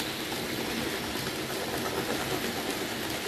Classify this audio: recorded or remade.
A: recorded